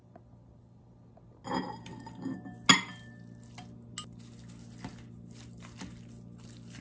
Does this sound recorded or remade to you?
recorded